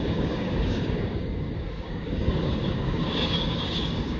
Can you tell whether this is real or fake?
fake